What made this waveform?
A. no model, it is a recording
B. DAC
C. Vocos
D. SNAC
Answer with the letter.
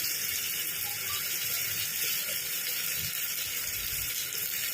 A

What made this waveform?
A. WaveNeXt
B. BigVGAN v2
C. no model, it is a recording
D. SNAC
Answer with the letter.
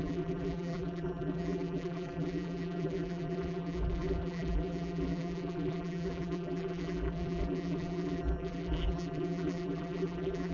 B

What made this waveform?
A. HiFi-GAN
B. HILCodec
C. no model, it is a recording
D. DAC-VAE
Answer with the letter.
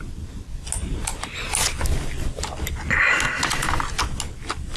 C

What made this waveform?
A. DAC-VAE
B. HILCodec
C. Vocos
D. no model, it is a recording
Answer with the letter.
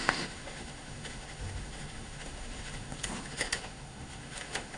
A